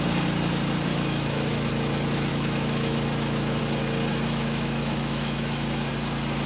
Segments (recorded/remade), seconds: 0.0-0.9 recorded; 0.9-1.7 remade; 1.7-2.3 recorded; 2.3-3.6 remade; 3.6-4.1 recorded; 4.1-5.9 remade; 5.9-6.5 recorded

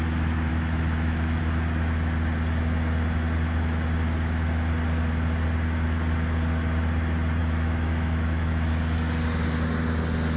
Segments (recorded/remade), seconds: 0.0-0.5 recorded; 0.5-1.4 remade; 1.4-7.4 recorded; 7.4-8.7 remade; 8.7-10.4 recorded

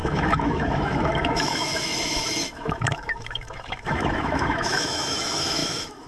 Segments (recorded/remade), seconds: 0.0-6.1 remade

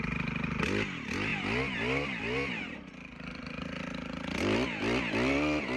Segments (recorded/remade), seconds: 0.0-5.8 recorded